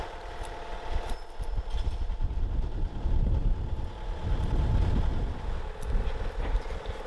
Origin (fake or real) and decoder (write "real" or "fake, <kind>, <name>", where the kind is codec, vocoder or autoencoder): real